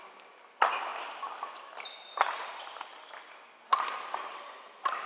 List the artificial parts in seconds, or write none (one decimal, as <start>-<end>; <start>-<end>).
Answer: none